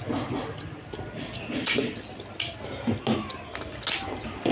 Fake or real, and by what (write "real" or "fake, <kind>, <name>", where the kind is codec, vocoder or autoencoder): real